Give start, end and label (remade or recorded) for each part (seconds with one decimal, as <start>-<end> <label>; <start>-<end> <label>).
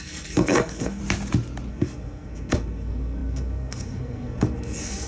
0.0-1.0 remade; 1.0-1.7 recorded; 1.7-5.1 remade